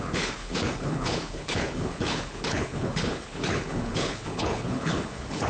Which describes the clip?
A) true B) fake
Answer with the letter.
B